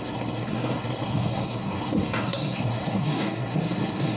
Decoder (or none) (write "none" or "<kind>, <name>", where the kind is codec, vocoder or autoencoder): codec, SNAC